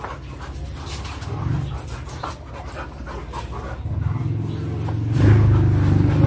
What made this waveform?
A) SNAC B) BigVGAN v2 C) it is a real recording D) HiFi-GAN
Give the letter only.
C